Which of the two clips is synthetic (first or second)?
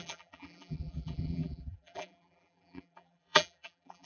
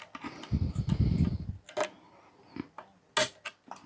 first